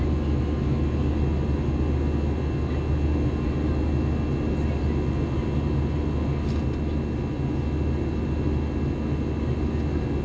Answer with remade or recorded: recorded